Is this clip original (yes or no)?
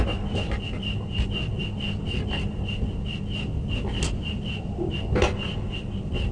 yes